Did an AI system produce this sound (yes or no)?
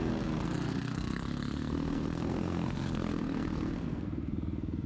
yes